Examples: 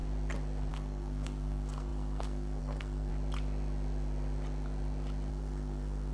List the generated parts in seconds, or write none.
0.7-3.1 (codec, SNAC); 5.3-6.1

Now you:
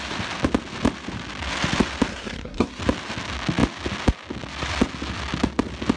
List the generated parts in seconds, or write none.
2.1-2.8 (codec, SNAC)

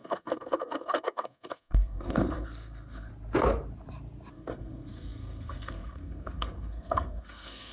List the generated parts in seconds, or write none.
0.0-3.1 (codec, SNAC); 4.3-7.7

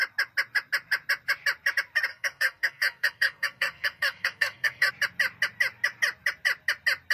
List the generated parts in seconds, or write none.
2.1-4.9 (codec, SNAC)

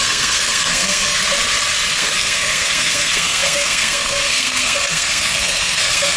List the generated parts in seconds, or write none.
0.0-1.2 (codec, SNAC); 1.9-6.2